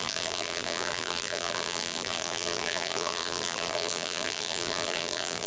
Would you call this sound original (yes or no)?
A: no